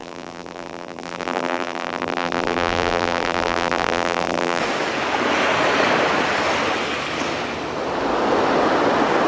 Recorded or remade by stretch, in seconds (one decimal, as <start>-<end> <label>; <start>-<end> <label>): 0.0-4.6 remade; 4.6-9.3 recorded